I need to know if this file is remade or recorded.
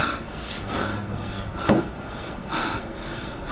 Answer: remade